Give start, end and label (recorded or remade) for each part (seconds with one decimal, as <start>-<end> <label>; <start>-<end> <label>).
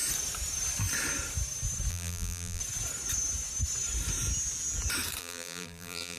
0.0-1.9 recorded; 1.9-2.6 remade; 2.6-5.2 recorded; 5.2-6.2 remade